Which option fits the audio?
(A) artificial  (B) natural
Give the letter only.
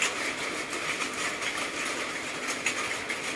B